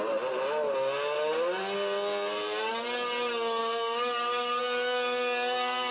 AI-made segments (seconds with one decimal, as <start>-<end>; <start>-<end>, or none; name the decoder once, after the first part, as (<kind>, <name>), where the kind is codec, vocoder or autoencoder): 3.6-4.6 (codec, DAC)